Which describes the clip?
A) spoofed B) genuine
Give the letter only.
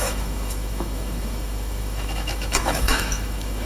A